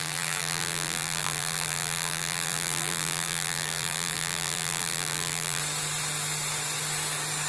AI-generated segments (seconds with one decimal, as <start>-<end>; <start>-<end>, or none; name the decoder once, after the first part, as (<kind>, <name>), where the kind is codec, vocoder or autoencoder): 0.0-5.6 (vocoder, BigVGAN v2)